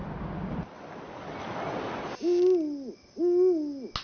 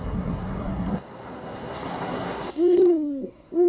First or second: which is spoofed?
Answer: second